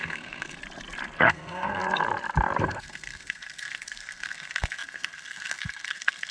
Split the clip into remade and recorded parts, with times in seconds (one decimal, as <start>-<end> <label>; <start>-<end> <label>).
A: 0.0-0.6 remade; 0.6-1.3 recorded; 1.3-1.8 remade; 1.8-2.6 recorded; 2.6-6.3 remade